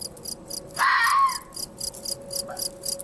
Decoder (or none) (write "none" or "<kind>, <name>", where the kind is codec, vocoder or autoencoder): none